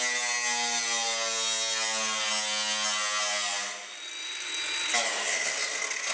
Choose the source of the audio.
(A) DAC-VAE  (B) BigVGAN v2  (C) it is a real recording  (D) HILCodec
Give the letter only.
C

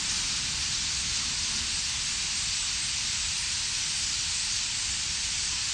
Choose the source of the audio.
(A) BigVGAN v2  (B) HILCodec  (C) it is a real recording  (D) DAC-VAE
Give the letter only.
C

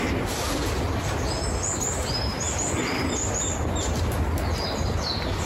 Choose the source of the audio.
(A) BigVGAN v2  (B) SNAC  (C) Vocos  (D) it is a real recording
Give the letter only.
D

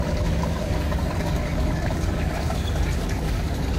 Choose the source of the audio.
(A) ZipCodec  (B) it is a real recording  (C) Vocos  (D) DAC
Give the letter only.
D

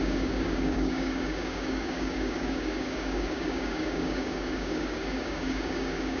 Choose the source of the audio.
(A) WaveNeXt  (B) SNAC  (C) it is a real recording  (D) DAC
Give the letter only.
D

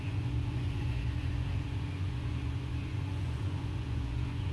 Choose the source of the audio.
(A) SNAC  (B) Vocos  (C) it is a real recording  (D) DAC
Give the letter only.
B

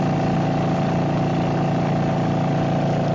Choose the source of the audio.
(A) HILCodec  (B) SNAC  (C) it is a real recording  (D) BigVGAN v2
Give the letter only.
C